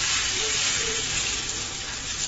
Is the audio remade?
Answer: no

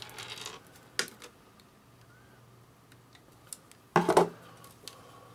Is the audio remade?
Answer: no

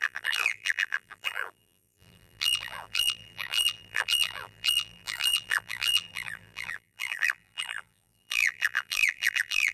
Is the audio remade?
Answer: yes